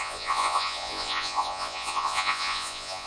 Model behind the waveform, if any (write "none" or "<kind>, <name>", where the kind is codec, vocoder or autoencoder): vocoder, Vocos